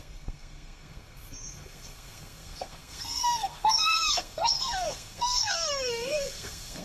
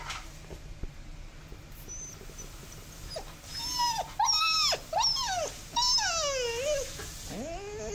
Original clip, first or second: second